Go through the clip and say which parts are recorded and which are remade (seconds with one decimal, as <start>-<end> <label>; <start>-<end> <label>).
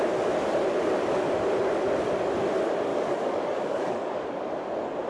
0.0-2.9 recorded; 2.9-4.5 remade; 4.5-5.1 recorded